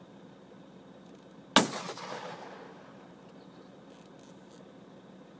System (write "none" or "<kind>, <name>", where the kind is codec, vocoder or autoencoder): none